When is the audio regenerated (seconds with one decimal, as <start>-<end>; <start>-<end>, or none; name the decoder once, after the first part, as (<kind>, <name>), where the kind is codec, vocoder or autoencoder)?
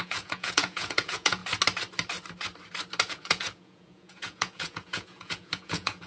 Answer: 0.0-1.4 (vocoder, Vocos); 3.1-6.1